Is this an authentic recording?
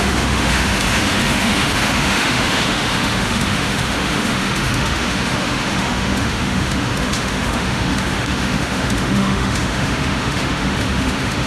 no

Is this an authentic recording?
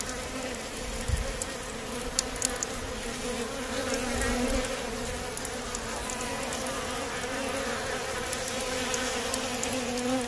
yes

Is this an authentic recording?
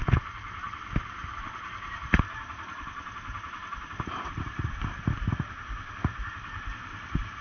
yes